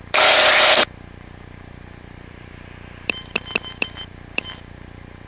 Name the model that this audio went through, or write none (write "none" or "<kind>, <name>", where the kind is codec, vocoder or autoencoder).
vocoder, BigVGAN v2